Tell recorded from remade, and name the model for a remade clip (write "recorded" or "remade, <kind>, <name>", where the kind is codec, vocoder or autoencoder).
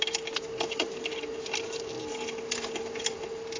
remade, vocoder, BigVGAN v2